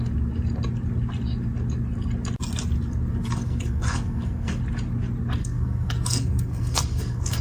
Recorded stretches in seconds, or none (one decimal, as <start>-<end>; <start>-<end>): 0.0-3.1; 4.6-5.4